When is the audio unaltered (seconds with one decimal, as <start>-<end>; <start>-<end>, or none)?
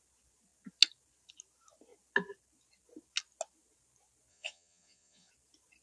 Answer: 0.0-4.3; 5.3-5.8